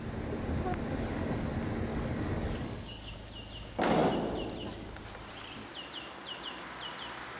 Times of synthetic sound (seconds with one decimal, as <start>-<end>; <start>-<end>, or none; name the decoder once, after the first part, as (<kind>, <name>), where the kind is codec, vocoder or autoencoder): 0.9-1.5 (codec, DAC); 1.9-3.1